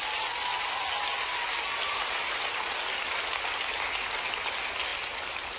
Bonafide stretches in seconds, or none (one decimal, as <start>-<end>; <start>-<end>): 0.0-5.6